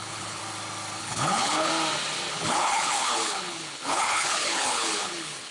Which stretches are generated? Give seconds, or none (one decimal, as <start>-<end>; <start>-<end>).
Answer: 0.0-0.4; 1.0-1.7; 2.3-5.5